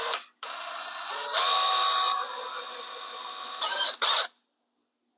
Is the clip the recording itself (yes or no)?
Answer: yes